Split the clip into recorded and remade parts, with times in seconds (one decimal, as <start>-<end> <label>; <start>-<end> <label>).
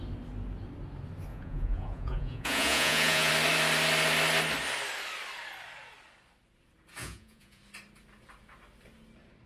0.0-1.3 recorded; 1.3-3.3 remade; 3.3-7.0 recorded; 7.0-7.6 remade; 7.6-9.5 recorded